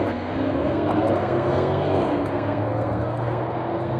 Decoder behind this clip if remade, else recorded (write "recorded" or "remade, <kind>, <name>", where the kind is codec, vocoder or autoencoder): remade, codec, SNAC